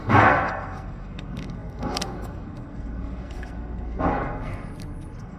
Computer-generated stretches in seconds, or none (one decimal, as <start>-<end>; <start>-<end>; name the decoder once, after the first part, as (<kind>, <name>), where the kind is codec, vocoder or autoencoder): 0.0-5.4 (codec, SNAC)